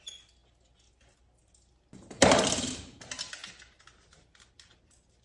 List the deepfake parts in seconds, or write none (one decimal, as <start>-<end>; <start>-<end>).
none